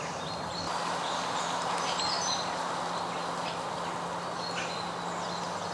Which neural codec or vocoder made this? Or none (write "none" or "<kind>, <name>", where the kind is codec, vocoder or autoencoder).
none